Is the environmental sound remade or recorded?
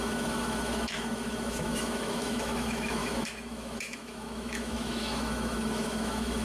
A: remade